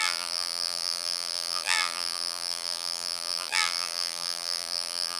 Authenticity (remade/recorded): remade